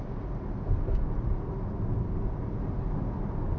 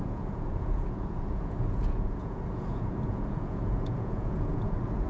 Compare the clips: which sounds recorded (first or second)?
first